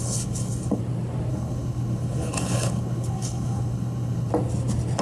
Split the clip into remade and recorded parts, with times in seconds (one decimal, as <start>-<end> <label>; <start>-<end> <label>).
0.0-0.8 remade; 0.8-1.3 recorded; 1.3-4.3 remade; 4.3-5.0 recorded